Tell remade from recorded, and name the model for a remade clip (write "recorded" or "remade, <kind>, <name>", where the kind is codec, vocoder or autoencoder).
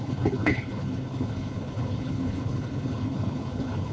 remade, codec, HILCodec